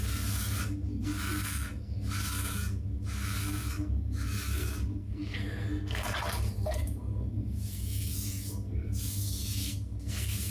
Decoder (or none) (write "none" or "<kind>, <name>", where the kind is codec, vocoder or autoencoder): codec, SNAC